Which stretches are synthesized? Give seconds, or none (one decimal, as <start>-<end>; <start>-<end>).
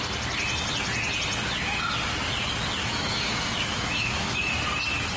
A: 2.8-4.5